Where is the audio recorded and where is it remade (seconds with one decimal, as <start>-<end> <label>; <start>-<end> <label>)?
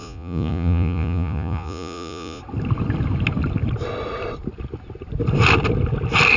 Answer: 0.0-2.4 remade; 2.4-6.4 recorded